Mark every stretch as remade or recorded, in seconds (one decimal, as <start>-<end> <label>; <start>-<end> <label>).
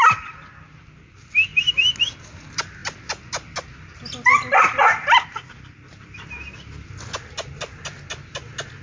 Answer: 0.0-8.8 recorded